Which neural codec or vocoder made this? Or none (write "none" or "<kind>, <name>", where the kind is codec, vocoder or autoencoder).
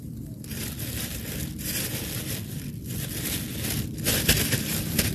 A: vocoder, BigVGAN v2